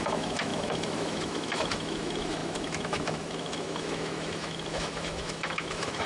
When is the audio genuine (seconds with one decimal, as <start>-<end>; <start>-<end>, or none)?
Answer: none